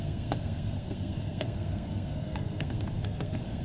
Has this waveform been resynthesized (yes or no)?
yes